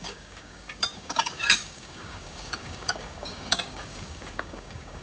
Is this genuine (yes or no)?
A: no